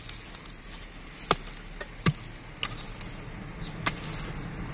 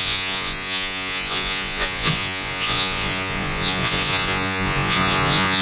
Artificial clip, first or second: second